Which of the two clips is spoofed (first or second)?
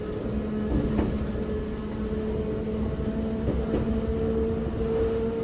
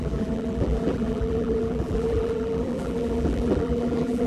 second